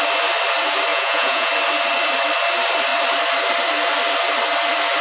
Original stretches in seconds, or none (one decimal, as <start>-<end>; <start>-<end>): 0.0-0.9; 1.5-5.0